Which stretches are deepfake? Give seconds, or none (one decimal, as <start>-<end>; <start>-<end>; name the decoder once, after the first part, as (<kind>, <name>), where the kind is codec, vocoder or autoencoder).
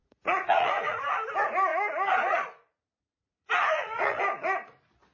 0.0-1.1 (vocoder, Vocos); 1.7-4.2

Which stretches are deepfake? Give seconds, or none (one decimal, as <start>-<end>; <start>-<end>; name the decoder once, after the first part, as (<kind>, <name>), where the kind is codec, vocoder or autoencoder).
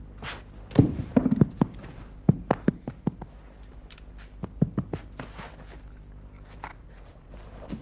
6.7-7.3 (vocoder, Vocos)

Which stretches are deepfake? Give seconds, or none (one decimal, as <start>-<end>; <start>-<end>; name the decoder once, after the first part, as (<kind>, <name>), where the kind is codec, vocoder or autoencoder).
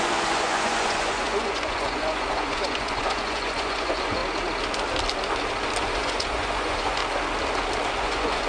0.0-4.2 (vocoder, Vocos); 5.8-7.0; 8.0-8.5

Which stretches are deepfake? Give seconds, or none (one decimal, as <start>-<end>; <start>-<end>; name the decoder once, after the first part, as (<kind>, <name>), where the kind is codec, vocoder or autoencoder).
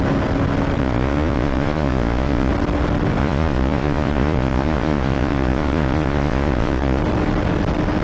0.8-2.5 (vocoder, Vocos); 3.2-7.0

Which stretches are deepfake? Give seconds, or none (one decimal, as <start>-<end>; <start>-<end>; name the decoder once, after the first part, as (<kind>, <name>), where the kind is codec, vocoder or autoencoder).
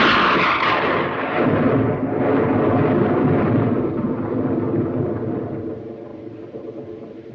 none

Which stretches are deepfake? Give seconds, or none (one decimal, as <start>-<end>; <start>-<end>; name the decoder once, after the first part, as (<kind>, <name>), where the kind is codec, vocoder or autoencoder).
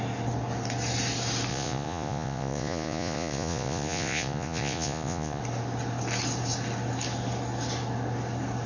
1.5-5.4 (vocoder, Vocos)